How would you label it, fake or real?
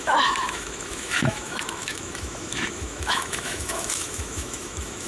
fake